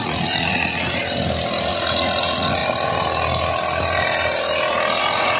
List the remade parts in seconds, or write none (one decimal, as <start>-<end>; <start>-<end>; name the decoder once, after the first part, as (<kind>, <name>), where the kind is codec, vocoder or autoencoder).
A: 0.0-1.0 (vocoder, Vocos); 1.7-2.6; 5.0-5.4